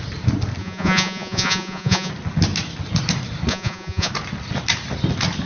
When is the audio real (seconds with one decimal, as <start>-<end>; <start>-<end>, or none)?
0.0-0.6; 2.1-3.5; 4.1-5.5